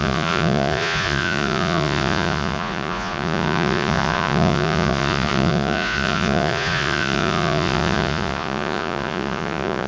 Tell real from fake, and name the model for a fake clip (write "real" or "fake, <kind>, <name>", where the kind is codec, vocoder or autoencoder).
fake, vocoder, Vocos